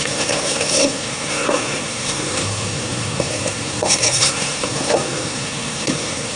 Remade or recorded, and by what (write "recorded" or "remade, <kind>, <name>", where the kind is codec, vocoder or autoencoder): remade, codec, SNAC